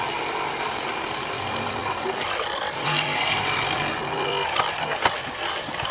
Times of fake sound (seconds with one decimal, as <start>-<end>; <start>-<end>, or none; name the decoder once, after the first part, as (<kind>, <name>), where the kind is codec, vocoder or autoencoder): none